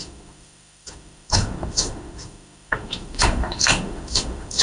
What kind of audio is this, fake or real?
fake